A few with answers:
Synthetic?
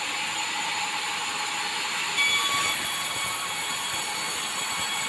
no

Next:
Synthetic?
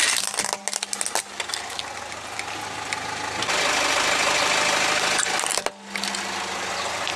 no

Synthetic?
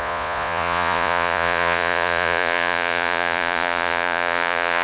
yes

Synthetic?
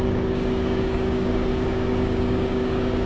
yes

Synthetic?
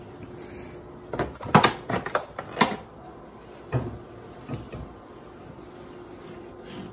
no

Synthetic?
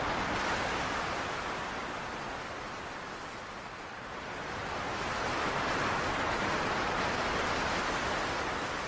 no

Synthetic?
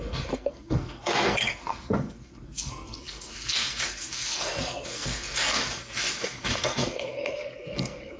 yes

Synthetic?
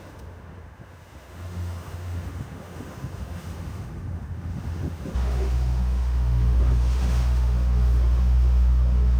yes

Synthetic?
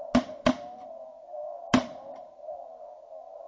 no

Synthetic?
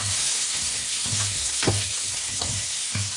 yes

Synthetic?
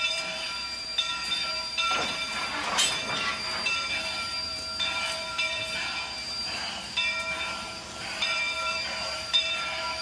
yes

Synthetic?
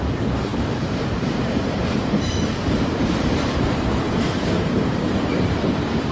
yes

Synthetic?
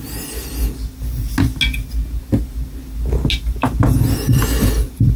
no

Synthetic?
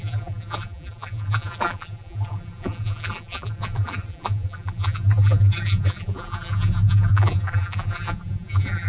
yes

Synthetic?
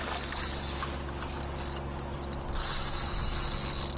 no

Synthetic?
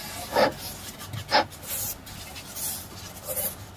no